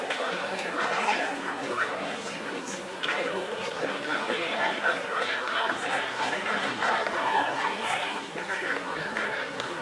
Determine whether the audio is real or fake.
fake